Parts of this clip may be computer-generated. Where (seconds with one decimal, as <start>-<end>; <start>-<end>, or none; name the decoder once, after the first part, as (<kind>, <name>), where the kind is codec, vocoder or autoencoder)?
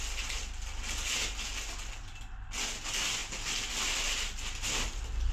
none